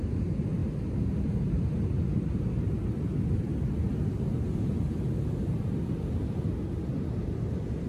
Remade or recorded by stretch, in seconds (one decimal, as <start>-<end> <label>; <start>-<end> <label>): 0.0-0.6 recorded; 0.6-1.6 remade; 1.6-7.9 recorded